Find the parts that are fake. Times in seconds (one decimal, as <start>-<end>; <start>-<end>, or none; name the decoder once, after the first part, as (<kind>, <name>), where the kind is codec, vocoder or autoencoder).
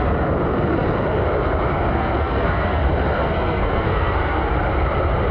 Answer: 1.9-2.8 (codec, SNAC); 3.2-4.5